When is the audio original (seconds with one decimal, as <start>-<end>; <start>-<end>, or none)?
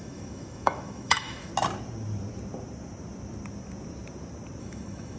1.5-4.6